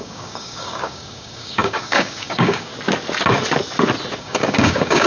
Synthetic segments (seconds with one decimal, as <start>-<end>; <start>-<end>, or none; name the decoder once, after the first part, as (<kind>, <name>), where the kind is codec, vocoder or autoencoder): 0.0-2.7 (codec, DAC); 4.2-5.1